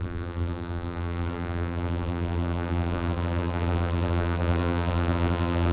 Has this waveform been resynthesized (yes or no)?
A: yes